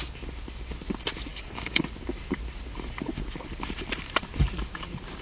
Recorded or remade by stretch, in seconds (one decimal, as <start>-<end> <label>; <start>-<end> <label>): 0.0-1.3 recorded; 1.3-1.8 remade; 1.8-5.2 recorded